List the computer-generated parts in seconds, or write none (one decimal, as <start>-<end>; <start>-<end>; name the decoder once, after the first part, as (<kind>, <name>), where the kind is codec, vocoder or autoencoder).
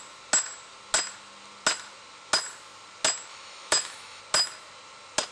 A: 3.3-4.2 (autoencoder, DAC-VAE)